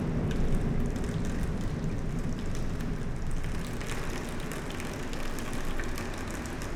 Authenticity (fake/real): real